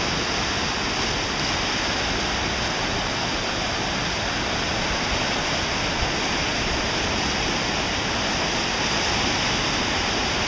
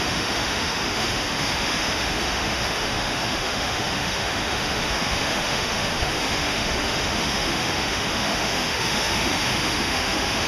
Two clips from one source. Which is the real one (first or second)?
first